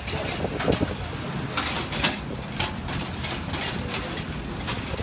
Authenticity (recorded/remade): recorded